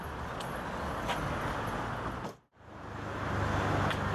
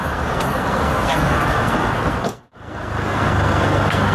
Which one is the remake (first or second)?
second